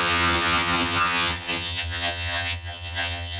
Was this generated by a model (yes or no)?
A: yes